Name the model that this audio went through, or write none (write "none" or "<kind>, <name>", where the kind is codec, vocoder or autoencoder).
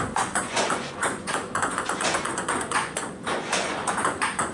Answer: vocoder, Vocos